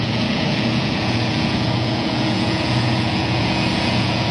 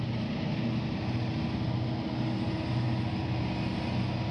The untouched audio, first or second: second